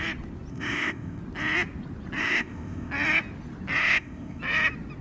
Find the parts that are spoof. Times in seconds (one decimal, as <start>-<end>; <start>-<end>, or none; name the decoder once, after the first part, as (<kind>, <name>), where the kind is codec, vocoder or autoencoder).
0.5-1.2 (codec, ZipCodec); 2.2-2.9; 3.8-4.4